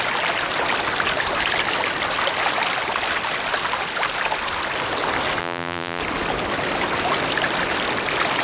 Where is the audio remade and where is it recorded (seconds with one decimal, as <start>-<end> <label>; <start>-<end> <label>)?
0.0-5.4 recorded; 5.4-6.0 remade; 6.0-8.4 recorded